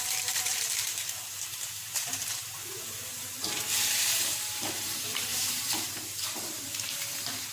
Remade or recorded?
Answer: remade